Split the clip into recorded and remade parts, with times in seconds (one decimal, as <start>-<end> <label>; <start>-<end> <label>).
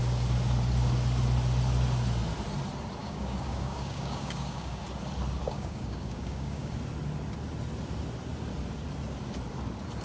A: 0.0-3.0 recorded; 3.0-4.8 remade; 4.8-5.4 recorded; 5.4-6.7 remade; 6.7-10.0 recorded